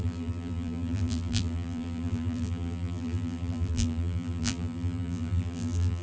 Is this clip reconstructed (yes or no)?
yes